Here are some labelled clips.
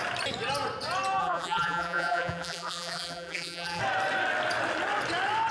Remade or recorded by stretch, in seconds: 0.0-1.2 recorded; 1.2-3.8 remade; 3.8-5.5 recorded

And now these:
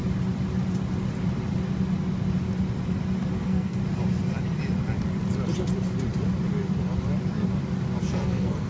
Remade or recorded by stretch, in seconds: 0.0-3.4 recorded; 3.4-3.8 remade; 3.8-8.1 recorded; 8.1-8.7 remade

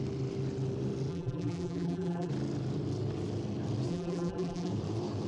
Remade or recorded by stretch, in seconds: 0.0-1.1 recorded; 1.1-2.3 remade; 2.3-3.9 recorded; 3.9-4.7 remade; 4.7-5.3 recorded

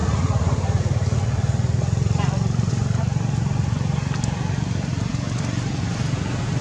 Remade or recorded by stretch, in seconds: 0.0-6.6 recorded

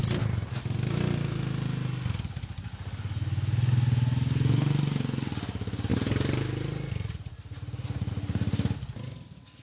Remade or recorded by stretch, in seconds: 0.0-9.6 recorded

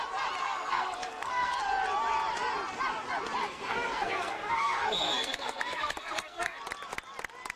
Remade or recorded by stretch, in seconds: 0.0-0.4 recorded; 0.4-1.6 remade; 1.6-3.4 recorded; 3.4-6.6 remade; 6.6-7.6 recorded